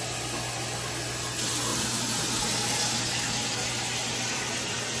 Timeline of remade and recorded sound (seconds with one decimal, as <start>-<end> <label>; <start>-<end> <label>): 0.0-5.0 recorded